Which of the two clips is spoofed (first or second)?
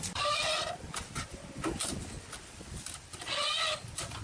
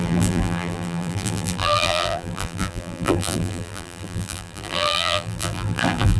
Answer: second